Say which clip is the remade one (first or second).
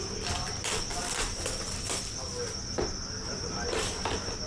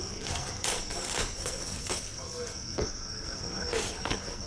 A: second